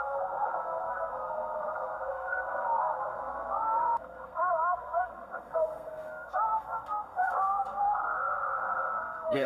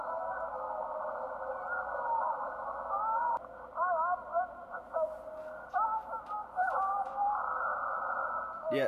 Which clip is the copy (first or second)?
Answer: first